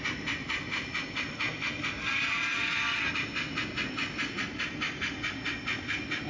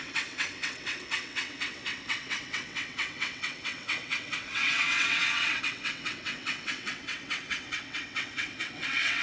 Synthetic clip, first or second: second